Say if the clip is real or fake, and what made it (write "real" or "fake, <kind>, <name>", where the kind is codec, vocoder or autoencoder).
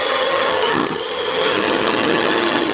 fake, vocoder, HiFi-GAN